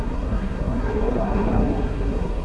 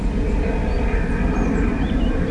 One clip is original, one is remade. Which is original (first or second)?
second